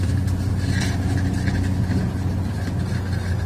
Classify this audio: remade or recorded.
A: remade